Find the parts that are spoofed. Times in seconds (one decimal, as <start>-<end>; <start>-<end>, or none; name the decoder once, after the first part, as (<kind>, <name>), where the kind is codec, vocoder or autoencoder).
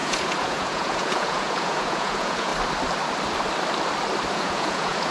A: 0.0-2.5 (vocoder, Vocos); 4.3-5.1